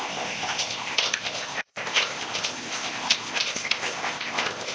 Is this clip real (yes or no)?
no